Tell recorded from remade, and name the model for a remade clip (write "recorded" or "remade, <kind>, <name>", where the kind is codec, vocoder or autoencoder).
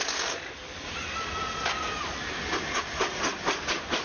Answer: recorded